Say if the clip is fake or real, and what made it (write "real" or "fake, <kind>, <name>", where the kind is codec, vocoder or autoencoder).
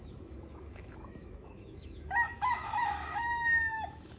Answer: fake, autoencoder, DAC-VAE